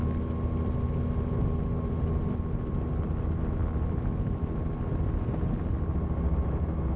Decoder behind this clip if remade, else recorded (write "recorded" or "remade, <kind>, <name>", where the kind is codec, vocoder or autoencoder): recorded